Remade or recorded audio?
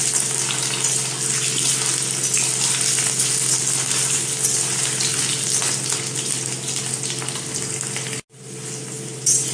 recorded